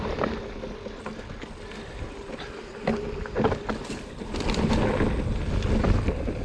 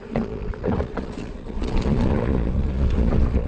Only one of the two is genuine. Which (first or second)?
first